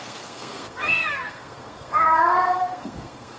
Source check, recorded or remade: remade